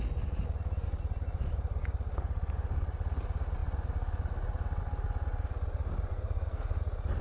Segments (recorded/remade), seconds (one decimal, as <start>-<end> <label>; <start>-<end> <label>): 0.0-6.1 recorded; 6.1-6.8 remade; 6.8-7.2 recorded